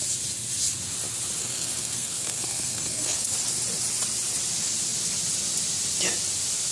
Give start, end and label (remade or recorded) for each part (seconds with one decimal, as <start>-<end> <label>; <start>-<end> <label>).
0.0-1.4 recorded; 1.4-3.3 remade; 3.3-6.7 recorded